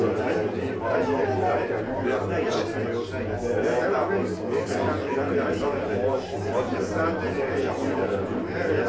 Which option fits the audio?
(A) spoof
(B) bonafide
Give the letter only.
B